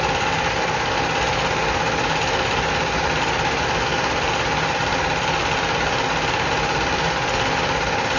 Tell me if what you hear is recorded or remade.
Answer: recorded